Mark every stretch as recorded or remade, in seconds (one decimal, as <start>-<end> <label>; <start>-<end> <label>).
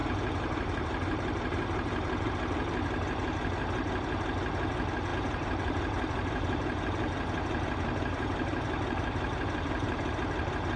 0.0-2.3 remade; 2.3-5.1 recorded; 5.1-10.1 remade; 10.1-10.8 recorded